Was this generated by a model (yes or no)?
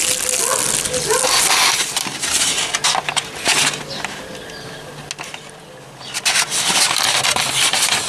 no